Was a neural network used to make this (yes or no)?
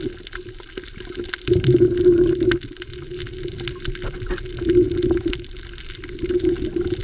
no